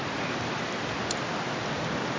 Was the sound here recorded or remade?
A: recorded